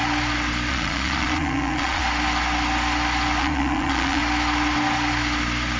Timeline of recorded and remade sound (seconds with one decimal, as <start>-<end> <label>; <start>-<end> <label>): 0.0-0.7 recorded; 0.7-2.0 remade; 2.0-3.4 recorded; 3.4-4.2 remade; 4.2-5.8 recorded